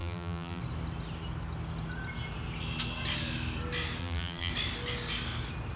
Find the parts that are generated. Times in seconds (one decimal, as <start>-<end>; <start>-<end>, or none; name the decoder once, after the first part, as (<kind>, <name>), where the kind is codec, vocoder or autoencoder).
0.0-0.6 (vocoder, BigVGAN v2); 4.0-4.5